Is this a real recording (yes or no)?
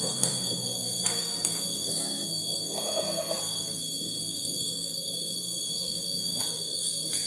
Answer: no